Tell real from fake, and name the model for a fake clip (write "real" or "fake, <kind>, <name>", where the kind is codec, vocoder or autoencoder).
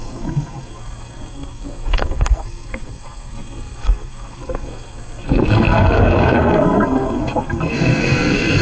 fake, codec, SNAC